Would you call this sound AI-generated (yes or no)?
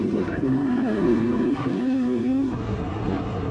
yes